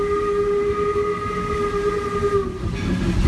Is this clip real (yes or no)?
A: yes